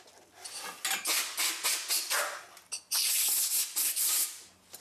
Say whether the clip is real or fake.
real